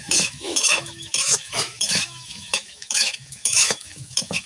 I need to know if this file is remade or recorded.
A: remade